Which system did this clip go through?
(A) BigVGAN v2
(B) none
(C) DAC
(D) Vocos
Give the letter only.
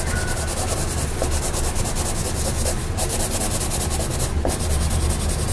B